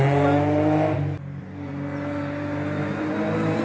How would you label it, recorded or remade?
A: recorded